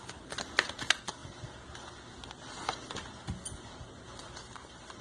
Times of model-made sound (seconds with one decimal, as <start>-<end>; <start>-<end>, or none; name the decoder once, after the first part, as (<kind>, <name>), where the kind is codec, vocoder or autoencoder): none